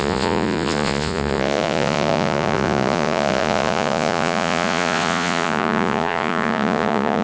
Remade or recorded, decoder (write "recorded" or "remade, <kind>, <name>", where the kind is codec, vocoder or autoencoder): remade, vocoder, Vocos